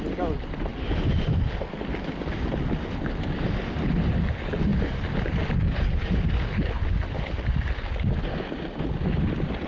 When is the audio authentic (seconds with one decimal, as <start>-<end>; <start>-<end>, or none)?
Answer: 0.0-0.7; 1.4-4.7; 7.7-9.7

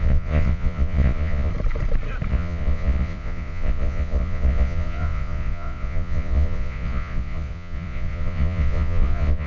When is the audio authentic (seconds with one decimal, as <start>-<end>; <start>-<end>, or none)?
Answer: 1.5-2.3

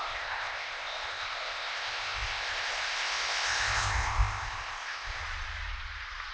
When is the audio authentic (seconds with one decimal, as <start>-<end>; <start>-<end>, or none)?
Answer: 5.2-6.3

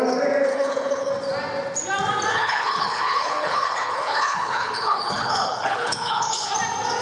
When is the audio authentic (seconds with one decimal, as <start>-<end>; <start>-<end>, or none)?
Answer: 0.0-0.5; 1.1-2.3; 6.5-7.0

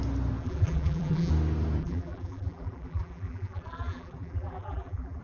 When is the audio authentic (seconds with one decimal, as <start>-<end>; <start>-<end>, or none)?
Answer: 0.0-0.4; 1.3-1.8